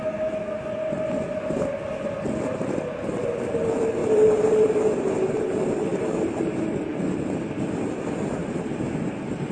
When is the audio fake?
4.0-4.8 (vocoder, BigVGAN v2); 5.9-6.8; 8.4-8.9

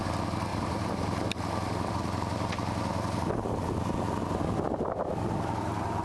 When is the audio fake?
0.5-1.9 (vocoder, BigVGAN v2)

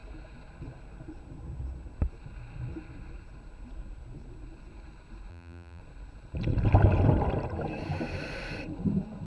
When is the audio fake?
5.3-5.8 (vocoder, BigVGAN v2)